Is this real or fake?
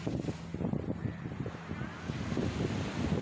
real